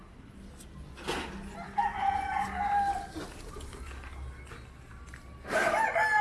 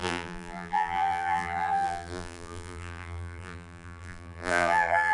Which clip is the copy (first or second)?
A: second